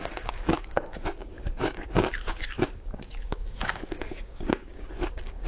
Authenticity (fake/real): fake